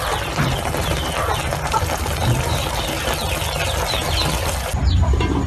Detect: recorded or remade recorded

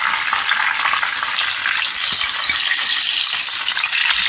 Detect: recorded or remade recorded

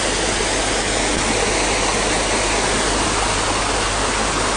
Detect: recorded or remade recorded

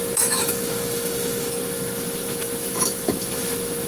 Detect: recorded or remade remade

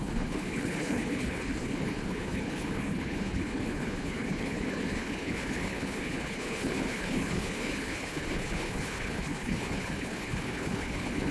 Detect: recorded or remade remade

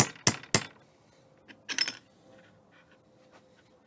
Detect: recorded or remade recorded